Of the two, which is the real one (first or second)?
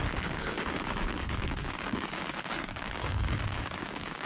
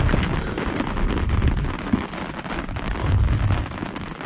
second